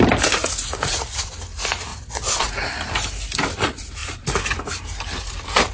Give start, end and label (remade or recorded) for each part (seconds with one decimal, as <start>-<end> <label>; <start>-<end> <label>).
0.0-0.4 recorded; 0.4-1.3 remade; 1.3-1.9 recorded; 1.9-2.8 remade; 2.8-5.7 recorded